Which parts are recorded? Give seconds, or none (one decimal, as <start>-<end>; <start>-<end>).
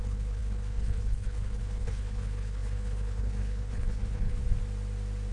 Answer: 4.4-5.3